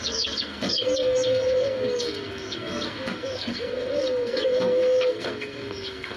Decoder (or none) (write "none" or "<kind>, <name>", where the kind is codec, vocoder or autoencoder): codec, SNAC